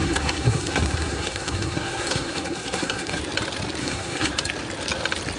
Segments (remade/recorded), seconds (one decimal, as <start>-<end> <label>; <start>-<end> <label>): 0.0-3.2 remade; 3.2-3.8 recorded; 3.8-4.3 remade; 4.3-5.4 recorded

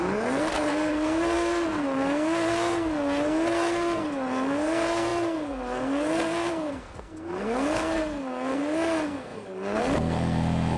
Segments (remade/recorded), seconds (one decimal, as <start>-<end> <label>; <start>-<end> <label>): 0.0-10.8 remade